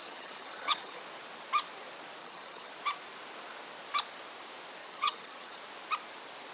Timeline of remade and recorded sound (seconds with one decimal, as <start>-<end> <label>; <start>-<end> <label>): 0.0-1.0 remade; 1.0-2.2 recorded; 2.2-2.7 remade; 2.7-4.8 recorded; 4.8-5.6 remade; 5.6-6.5 recorded